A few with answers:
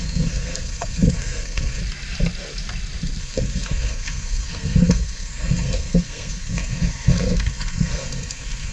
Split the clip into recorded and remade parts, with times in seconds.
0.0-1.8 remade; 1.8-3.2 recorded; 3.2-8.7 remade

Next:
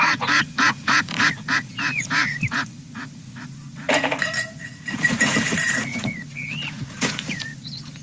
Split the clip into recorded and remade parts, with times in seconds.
0.0-8.0 remade

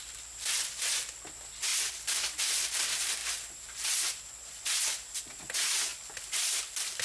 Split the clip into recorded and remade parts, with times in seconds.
0.0-7.0 recorded

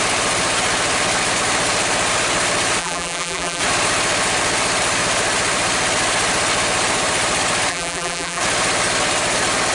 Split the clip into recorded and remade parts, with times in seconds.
0.0-2.8 recorded; 2.8-3.6 remade; 3.6-7.7 recorded; 7.7-8.4 remade; 8.4-9.7 recorded

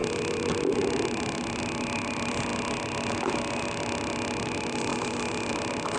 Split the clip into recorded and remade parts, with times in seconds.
0.0-6.0 recorded